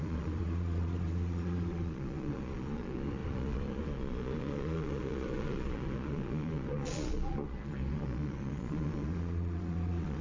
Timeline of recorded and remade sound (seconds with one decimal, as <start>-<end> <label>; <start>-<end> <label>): 0.0-10.2 remade